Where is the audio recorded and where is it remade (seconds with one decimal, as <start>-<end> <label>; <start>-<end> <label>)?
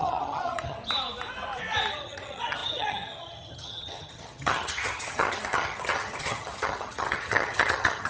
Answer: 0.0-0.8 remade; 0.8-1.9 recorded; 1.9-8.1 remade